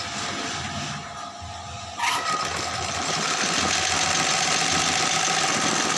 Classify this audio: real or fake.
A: real